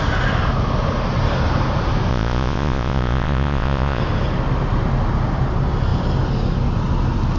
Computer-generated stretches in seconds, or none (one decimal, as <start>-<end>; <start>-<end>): 2.1-4.0